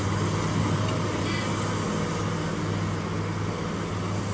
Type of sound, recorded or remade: recorded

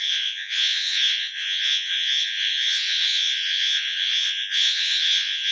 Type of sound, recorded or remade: remade